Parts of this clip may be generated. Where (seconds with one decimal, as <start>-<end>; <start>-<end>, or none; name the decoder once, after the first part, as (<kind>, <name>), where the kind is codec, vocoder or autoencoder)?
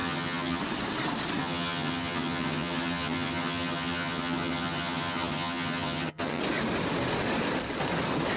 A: 0.0-0.6 (vocoder, HiFi-GAN); 1.4-6.4